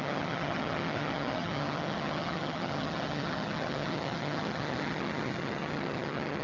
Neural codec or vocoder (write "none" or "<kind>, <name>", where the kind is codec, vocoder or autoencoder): vocoder, HiFi-GAN